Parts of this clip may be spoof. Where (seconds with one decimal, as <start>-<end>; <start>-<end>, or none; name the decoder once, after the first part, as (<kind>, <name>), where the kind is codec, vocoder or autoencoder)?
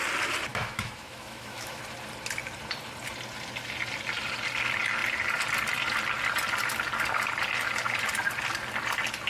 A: 0.5-1.8 (autoencoder, DAC-VAE)